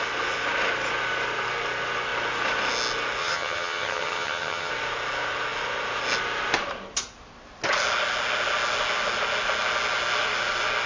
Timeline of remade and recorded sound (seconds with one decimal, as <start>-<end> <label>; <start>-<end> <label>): 0.0-3.2 recorded; 3.2-4.7 remade; 4.7-10.9 recorded